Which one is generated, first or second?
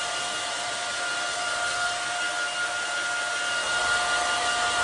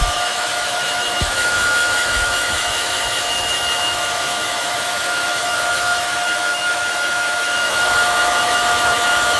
second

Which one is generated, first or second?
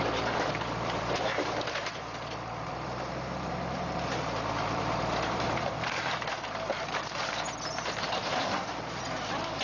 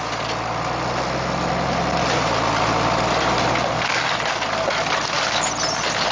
first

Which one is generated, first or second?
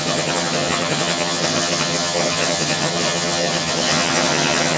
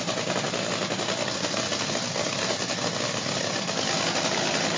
first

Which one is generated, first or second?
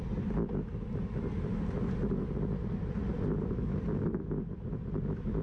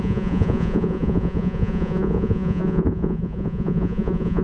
second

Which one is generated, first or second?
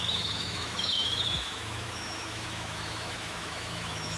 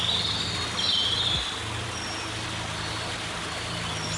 first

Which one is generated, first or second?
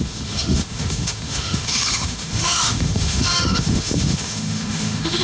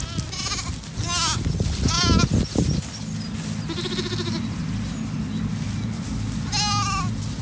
first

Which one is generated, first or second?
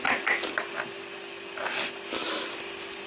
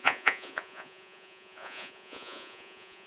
second